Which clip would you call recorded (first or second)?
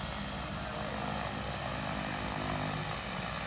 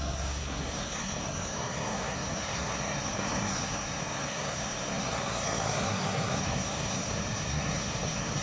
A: first